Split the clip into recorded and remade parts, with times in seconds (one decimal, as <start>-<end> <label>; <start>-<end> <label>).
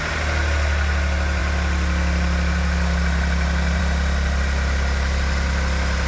0.0-6.1 recorded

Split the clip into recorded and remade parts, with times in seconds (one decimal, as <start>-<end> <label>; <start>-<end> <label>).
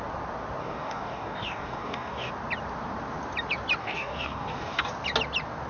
0.0-0.6 recorded; 0.6-2.3 remade; 2.3-3.8 recorded; 3.8-4.9 remade; 4.9-5.7 recorded